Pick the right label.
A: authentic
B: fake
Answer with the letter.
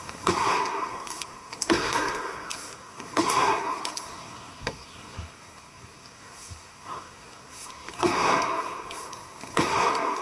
B